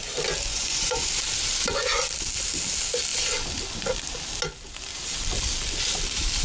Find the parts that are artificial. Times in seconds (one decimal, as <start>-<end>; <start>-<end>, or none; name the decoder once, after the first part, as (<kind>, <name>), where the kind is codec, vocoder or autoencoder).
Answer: 0.5-1.1 (vocoder, Vocos)

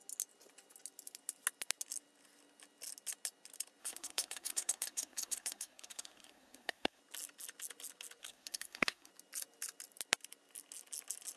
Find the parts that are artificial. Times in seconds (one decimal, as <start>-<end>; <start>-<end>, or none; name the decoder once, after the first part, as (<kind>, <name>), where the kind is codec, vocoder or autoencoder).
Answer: 3.8-7.0 (codec, SNAC); 8.2-9.1

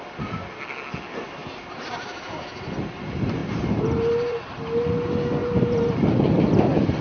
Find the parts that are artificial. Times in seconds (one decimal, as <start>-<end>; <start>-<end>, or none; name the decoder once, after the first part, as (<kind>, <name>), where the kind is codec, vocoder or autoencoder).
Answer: 3.4-4.4 (vocoder, BigVGAN v2); 5.4-6.2

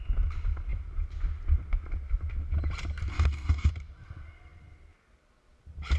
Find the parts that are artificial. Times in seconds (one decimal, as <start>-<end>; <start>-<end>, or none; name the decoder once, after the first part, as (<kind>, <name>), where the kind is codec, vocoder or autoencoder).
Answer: 3.1-3.7 (codec, DAC)

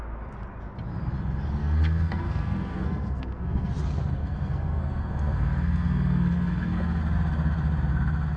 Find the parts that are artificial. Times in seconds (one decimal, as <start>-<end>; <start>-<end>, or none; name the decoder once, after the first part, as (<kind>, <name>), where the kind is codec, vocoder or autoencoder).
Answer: 1.6-3.7 (codec, SNAC); 4.2-7.0

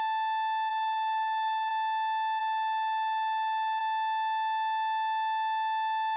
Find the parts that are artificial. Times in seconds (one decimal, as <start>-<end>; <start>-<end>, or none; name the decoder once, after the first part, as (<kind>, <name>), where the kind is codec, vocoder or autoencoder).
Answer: 0.7-1.7 (codec, SNAC)

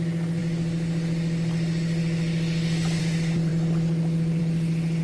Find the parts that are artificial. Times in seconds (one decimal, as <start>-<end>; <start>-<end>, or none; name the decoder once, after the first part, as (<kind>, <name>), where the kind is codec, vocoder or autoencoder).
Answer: none